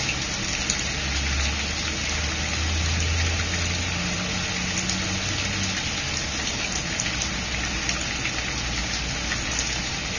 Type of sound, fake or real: real